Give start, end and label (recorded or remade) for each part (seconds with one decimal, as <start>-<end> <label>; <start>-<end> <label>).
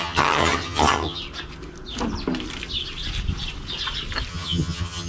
0.0-1.2 remade; 1.2-4.3 recorded; 4.3-5.1 remade